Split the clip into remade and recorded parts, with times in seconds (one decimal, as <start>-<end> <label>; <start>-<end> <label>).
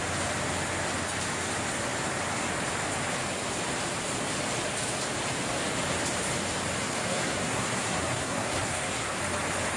0.0-6.8 recorded; 6.8-9.2 remade; 9.2-9.8 recorded